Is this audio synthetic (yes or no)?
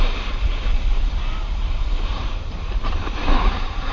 yes